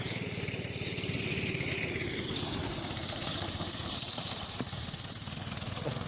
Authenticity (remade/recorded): remade